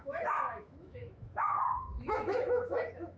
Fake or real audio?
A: fake